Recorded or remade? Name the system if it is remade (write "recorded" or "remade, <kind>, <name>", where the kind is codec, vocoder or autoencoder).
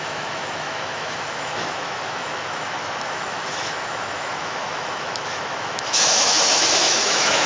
remade, autoencoder, DAC-VAE